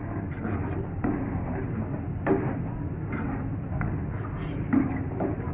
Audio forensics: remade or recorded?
recorded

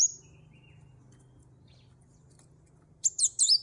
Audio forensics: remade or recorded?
recorded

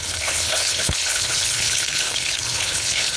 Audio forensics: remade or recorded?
remade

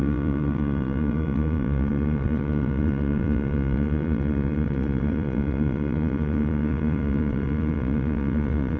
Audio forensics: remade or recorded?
remade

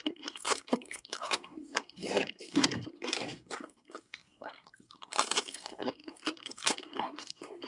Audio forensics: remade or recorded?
remade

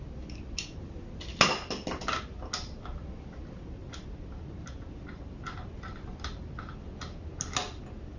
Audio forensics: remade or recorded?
recorded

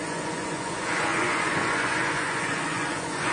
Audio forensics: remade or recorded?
remade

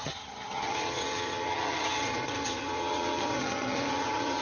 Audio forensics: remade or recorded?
remade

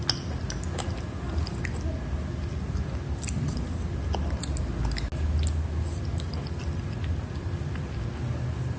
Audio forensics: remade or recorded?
recorded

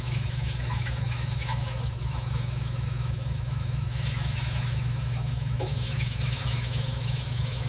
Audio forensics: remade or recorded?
remade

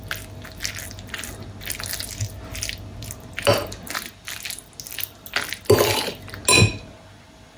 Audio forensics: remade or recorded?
recorded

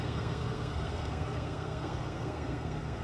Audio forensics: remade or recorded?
remade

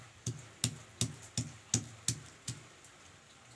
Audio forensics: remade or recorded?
recorded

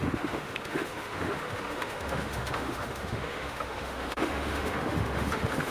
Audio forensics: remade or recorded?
remade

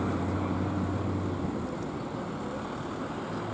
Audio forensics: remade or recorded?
recorded